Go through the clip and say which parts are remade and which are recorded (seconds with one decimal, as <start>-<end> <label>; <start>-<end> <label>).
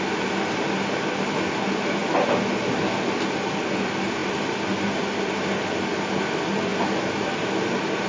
0.0-8.1 recorded